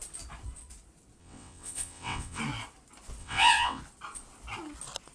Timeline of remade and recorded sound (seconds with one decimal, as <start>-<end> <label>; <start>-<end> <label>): 0.0-1.2 recorded; 1.2-2.4 remade; 2.4-3.2 recorded; 3.2-3.8 remade; 3.8-5.1 recorded